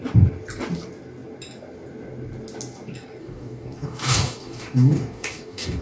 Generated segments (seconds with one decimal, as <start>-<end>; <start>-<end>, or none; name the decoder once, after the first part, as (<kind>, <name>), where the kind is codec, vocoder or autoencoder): 3.2-5.8 (codec, DAC)